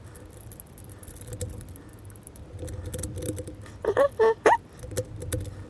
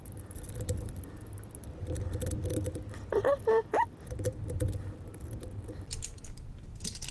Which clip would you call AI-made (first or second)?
second